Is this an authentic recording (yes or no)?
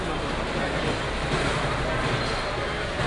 yes